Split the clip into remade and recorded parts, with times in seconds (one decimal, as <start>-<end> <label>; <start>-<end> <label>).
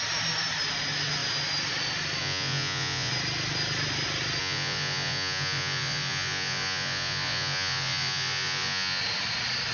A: 0.0-2.2 recorded; 2.2-3.1 remade; 3.1-4.4 recorded; 4.4-9.0 remade; 9.0-9.7 recorded